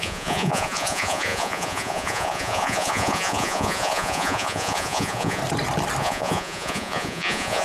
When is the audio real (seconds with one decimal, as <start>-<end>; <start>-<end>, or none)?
5.4-6.0